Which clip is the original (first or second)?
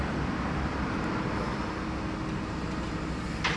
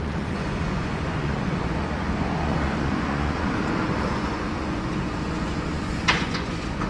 first